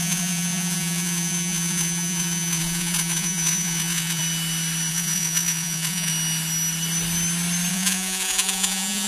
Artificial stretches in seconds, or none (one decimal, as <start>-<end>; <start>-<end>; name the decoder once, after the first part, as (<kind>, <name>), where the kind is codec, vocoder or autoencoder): 0.0-4.2 (vocoder, Vocos); 4.9-6.1; 7.7-9.1

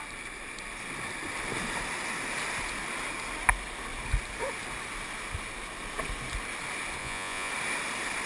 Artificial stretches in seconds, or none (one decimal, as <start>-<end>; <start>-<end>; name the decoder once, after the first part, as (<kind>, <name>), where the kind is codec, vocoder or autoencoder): 7.0-7.5 (vocoder, Vocos)

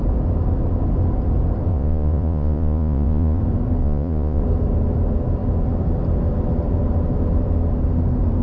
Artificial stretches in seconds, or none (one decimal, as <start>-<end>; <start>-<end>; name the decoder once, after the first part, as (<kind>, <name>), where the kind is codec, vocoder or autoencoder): 1.7-3.4 (vocoder, Vocos); 3.8-4.4

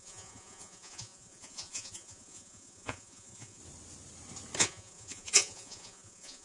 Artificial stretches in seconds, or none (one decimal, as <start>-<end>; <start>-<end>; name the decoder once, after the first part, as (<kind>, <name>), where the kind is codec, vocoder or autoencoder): 0.0-3.6 (vocoder, Vocos); 4.6-6.4